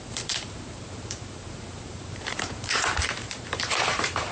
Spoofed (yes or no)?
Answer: yes